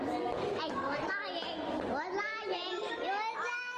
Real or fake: real